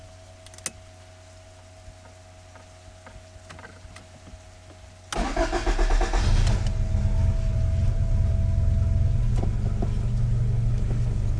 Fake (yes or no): no